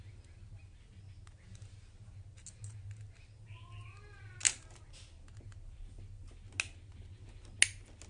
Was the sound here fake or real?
real